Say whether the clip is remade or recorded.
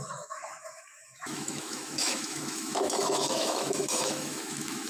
remade